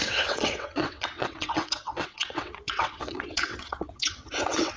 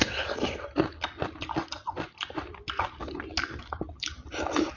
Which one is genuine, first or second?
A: second